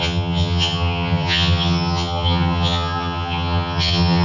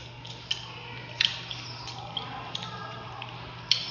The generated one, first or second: first